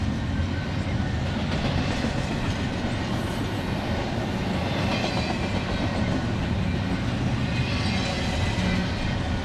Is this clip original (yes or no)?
yes